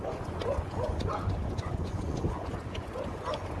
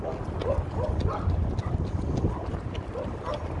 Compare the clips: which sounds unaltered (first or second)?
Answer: second